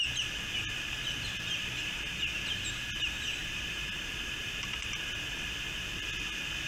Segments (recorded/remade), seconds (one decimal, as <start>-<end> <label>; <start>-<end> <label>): 0.0-3.4 recorded; 3.4-4.1 remade; 4.1-6.7 recorded